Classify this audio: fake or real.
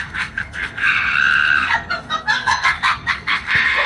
fake